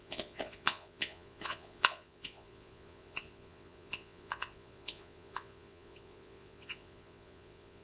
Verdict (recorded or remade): remade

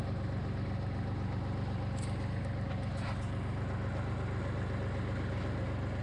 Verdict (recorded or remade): recorded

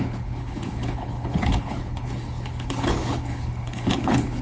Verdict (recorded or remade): remade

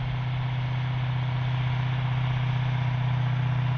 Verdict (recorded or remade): recorded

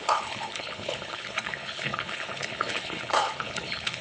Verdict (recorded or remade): remade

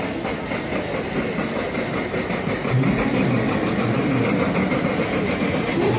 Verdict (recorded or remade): recorded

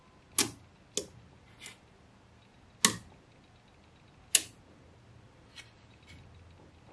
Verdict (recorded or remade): recorded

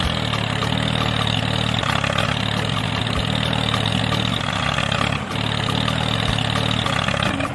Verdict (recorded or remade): recorded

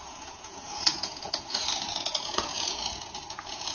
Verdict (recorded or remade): remade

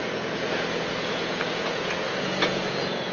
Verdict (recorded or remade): remade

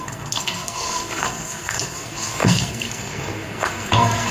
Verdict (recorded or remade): remade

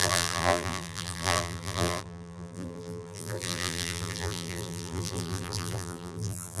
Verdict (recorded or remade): remade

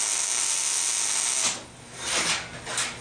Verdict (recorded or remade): recorded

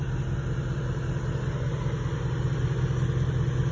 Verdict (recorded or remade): recorded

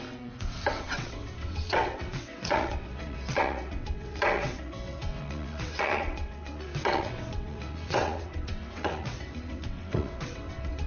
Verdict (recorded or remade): remade